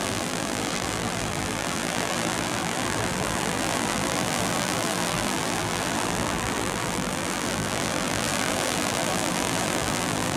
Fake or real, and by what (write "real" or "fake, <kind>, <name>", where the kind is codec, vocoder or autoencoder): fake, vocoder, BigVGAN v2